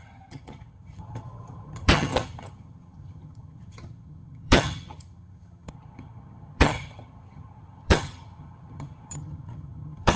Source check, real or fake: fake